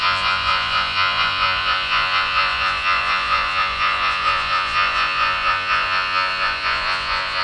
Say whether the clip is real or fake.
fake